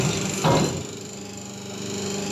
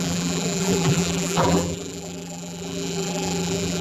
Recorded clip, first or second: first